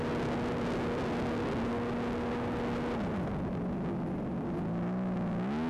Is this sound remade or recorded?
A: recorded